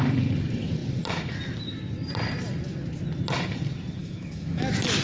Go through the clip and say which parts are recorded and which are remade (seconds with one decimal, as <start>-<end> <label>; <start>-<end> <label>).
0.0-4.0 recorded; 4.0-4.6 remade; 4.6-5.0 recorded